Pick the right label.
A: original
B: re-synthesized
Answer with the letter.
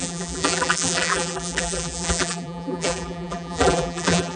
B